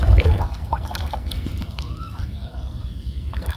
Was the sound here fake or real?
fake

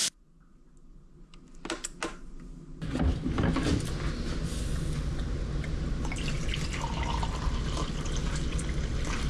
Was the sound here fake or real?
real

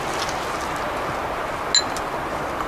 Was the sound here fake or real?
real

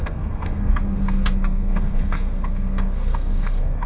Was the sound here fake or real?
fake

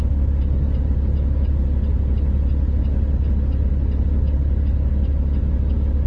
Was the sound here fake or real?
real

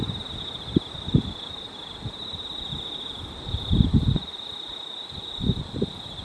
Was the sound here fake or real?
real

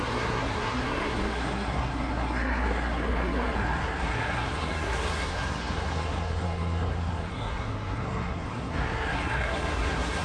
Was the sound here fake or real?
fake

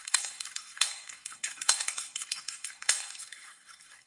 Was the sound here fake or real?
fake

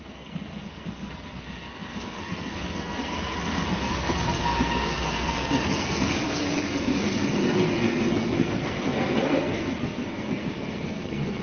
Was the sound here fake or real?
fake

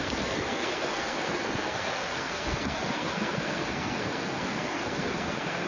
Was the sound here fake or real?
fake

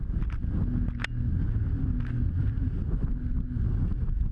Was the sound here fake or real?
real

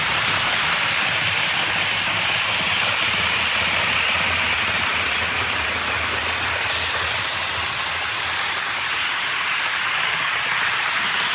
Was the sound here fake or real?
real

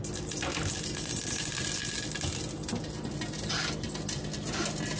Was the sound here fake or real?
real